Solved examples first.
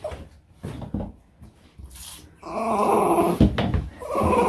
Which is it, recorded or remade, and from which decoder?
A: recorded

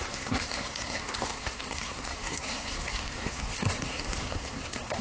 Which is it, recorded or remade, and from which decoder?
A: remade, codec, SNAC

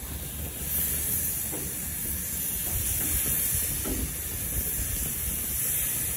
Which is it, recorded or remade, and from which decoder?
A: recorded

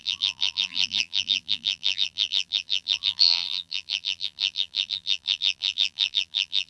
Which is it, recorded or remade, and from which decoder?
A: remade, vocoder, BigVGAN v2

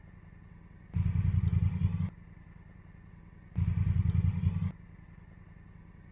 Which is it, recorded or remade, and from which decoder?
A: recorded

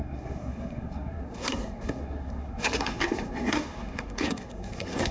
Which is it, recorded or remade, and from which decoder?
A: remade, codec, SNAC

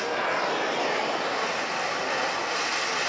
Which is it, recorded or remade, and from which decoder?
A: recorded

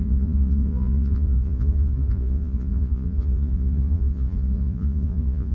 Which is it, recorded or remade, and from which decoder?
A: remade, vocoder, Vocos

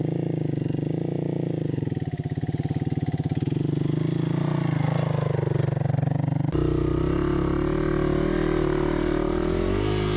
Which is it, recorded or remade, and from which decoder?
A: recorded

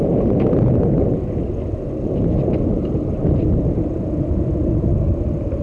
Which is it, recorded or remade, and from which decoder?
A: recorded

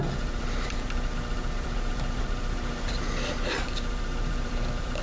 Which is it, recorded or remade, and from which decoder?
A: remade, vocoder, BigVGAN v2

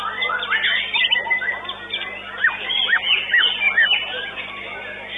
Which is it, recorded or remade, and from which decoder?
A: recorded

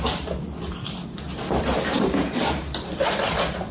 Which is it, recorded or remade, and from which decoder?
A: recorded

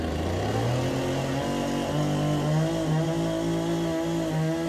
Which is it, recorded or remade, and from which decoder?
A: recorded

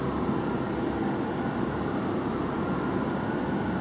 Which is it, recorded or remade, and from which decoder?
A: recorded